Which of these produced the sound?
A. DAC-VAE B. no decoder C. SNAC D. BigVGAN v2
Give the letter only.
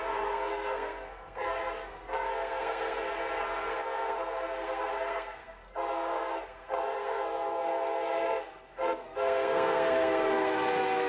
C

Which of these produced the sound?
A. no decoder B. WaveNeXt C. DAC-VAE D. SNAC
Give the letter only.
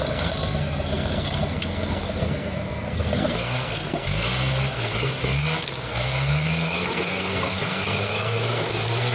D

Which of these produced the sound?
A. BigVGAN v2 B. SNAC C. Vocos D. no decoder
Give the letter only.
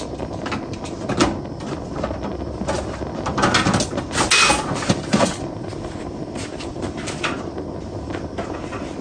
D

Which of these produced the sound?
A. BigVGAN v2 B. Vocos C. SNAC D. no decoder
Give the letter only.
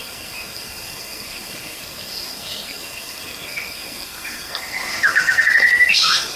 C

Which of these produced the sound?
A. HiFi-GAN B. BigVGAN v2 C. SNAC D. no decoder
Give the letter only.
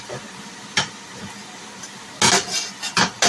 D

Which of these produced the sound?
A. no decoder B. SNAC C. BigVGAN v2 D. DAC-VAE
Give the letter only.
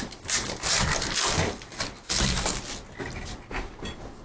A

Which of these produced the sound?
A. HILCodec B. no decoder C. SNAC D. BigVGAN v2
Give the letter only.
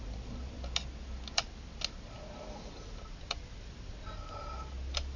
B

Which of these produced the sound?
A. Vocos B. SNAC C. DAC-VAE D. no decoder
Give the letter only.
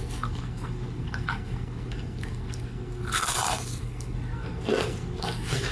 B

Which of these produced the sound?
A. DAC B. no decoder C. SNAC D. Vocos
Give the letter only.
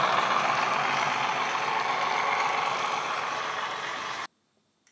B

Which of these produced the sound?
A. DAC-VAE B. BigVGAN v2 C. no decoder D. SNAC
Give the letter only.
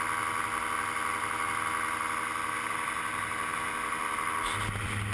C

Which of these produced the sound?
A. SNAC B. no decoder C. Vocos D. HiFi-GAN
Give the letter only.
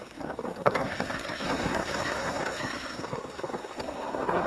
A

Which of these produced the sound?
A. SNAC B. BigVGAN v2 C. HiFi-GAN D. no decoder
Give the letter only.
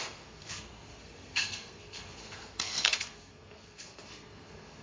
A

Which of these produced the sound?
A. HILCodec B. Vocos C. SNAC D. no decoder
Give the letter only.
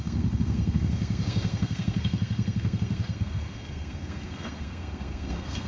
C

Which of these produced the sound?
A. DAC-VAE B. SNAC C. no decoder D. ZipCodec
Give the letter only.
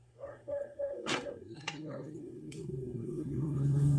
B